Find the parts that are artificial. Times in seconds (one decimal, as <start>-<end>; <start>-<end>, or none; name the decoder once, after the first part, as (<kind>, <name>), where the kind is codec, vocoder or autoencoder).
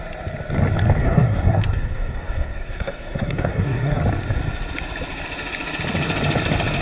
1.0-4.0 (codec, SNAC)